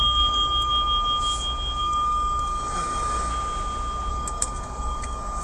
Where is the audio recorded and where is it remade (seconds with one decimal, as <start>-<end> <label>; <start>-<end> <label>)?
0.0-0.7 remade; 0.7-1.8 recorded; 1.8-3.3 remade; 3.3-4.1 recorded; 4.1-5.4 remade